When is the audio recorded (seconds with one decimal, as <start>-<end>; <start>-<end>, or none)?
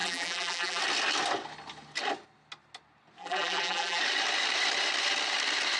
0.8-3.2; 4.0-5.8